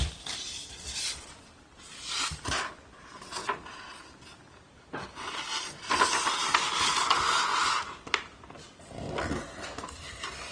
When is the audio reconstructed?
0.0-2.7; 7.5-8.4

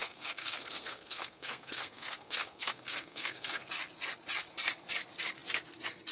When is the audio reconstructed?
0.0-3.7

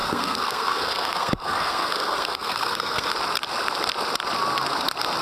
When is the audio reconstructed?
0.0-3.1

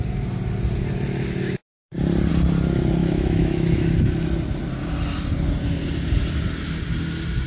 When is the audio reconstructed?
3.0-3.9

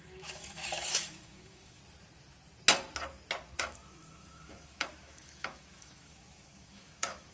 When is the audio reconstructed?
0.0-1.8; 3.6-7.3